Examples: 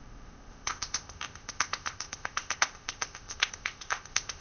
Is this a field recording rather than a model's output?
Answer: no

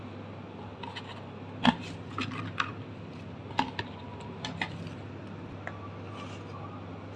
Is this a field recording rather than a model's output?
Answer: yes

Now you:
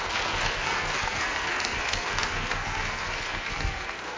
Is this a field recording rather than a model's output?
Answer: no